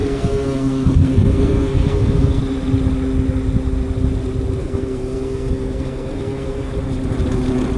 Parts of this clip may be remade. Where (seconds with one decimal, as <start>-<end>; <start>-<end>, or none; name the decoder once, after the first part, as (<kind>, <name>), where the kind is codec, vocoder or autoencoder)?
0.0-2.4 (codec, SNAC); 4.6-6.7

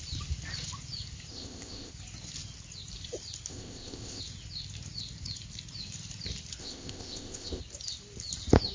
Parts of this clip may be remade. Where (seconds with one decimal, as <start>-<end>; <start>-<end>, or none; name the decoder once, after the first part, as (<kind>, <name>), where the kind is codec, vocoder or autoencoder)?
1.3-1.9 (codec, ZipCodec); 3.5-4.2; 6.6-7.6

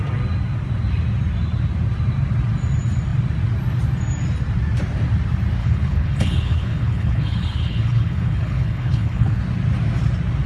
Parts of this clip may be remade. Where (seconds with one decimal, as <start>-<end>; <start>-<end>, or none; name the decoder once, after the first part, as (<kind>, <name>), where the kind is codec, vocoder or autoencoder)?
5.6-9.4 (codec, HILCodec)